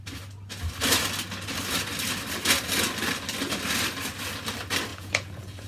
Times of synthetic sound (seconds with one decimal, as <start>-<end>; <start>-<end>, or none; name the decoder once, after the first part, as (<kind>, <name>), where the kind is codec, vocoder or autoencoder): 4.9-5.7 (vocoder, Vocos)